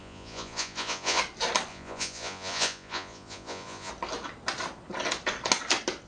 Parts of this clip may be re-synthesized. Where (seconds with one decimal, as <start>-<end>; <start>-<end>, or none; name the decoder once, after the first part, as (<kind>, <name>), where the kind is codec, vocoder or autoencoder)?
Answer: 0.0-1.2 (vocoder, Vocos); 1.7-3.9